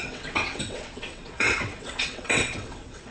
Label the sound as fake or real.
fake